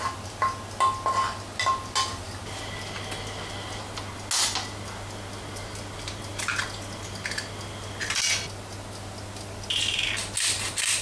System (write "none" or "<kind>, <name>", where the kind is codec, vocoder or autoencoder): none